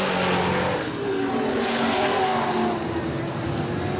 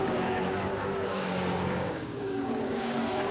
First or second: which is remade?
second